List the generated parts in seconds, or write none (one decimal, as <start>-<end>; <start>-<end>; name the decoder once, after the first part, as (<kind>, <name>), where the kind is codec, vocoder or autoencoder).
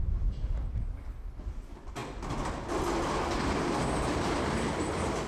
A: none